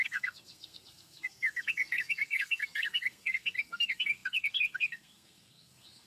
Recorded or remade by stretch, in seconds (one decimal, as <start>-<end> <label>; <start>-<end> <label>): 0.0-6.1 remade